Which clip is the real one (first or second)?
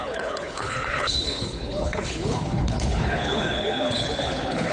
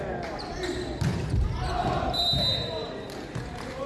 second